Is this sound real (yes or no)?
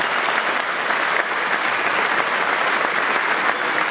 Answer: yes